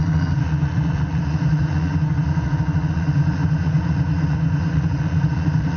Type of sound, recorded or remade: remade